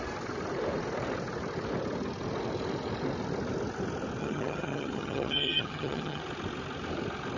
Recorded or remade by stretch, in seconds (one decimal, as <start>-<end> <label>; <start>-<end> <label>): 0.0-4.2 recorded; 4.2-6.2 remade; 6.2-7.4 recorded